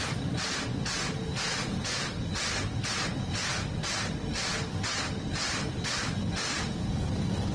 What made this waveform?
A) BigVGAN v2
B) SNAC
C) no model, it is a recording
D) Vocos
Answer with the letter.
C